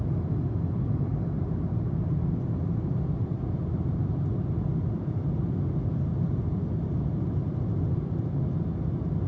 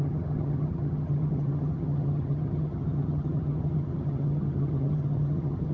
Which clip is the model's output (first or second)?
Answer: second